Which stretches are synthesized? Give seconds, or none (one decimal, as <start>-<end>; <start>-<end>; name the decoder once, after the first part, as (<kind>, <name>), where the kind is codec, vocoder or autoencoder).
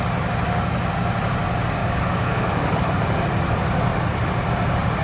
1.8-2.9 (codec, DAC)